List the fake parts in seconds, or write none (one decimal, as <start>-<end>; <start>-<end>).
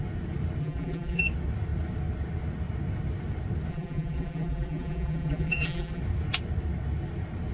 0.6-1.2; 3.7-6.0